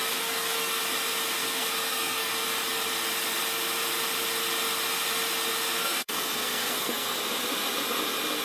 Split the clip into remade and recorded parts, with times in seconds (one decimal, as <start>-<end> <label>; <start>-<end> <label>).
0.0-0.8 remade; 0.8-1.4 recorded; 1.4-2.3 remade; 2.3-5.8 recorded; 5.8-7.2 remade; 7.2-8.4 recorded